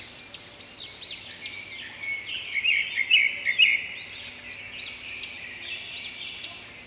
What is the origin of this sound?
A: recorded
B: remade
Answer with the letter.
A